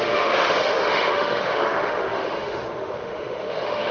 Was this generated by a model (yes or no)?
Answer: yes